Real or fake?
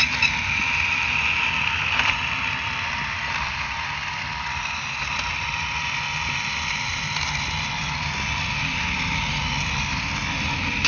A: fake